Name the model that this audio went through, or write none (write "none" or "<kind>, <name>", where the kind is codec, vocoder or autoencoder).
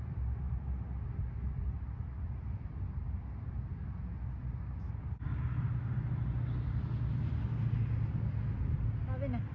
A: none